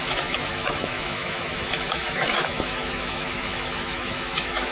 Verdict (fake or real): fake